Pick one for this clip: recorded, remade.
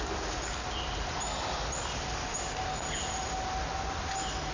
recorded